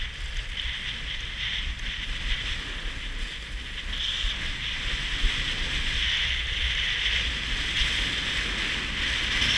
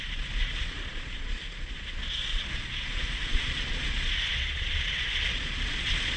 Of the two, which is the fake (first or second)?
second